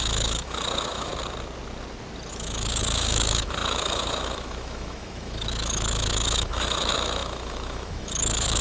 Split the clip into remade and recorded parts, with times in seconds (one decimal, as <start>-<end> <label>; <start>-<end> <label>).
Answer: 0.0-1.1 remade; 1.1-2.3 recorded; 2.3-8.6 remade